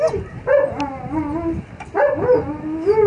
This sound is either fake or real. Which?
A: real